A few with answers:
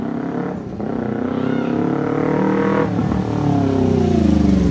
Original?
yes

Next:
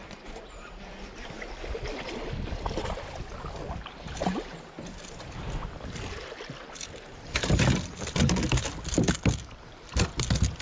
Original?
yes